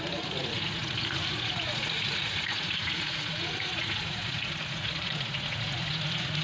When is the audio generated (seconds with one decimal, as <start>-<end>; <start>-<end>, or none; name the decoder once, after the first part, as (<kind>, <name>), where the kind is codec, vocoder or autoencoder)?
0.0-6.4 (vocoder, Vocos)